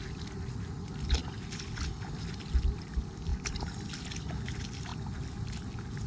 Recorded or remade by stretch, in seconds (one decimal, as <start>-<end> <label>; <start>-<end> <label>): 0.0-6.1 recorded

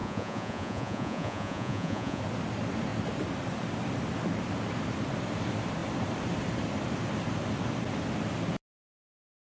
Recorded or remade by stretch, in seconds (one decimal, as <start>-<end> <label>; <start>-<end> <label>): 0.0-2.2 remade; 2.2-9.5 recorded

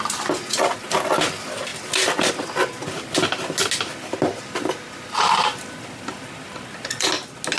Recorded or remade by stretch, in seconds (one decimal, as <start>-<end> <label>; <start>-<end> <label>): 0.0-7.6 recorded

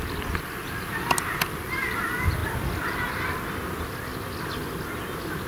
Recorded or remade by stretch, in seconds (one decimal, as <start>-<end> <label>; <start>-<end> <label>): 0.0-5.5 recorded

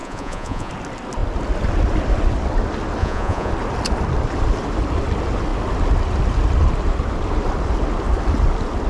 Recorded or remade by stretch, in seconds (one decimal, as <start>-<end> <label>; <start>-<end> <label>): 0.0-0.7 remade; 0.7-3.0 recorded; 3.0-3.5 remade; 3.5-8.9 recorded

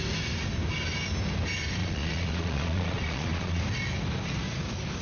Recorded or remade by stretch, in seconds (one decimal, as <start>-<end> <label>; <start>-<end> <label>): 0.0-1.8 recorded; 1.8-3.6 remade; 3.6-5.0 recorded